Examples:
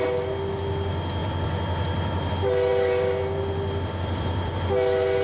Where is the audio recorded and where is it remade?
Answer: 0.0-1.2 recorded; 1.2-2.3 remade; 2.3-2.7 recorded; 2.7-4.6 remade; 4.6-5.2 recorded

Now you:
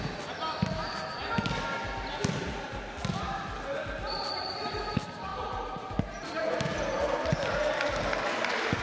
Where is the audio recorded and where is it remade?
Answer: 0.0-5.3 recorded; 5.3-6.0 remade; 6.0-8.8 recorded

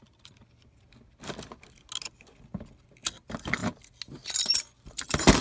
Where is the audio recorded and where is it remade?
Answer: 0.0-0.4 remade; 0.4-2.8 recorded; 2.8-3.6 remade; 3.6-4.4 recorded; 4.4-5.4 remade

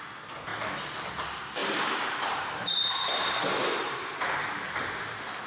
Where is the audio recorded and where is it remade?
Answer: 0.0-1.6 recorded; 1.6-4.9 remade; 4.9-5.5 recorded